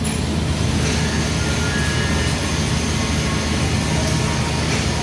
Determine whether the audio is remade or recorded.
recorded